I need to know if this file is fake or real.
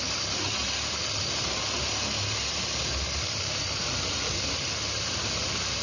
real